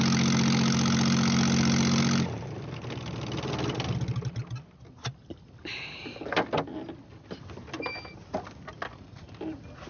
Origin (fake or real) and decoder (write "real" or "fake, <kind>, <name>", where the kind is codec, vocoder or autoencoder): real